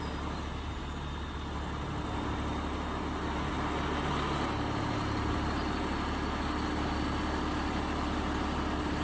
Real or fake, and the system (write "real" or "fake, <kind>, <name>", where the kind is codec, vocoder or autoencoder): real